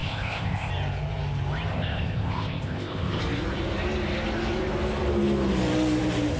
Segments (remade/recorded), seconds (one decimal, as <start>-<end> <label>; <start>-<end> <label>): 0.0-0.7 remade; 0.7-1.7 recorded; 1.7-3.2 remade; 3.2-6.4 recorded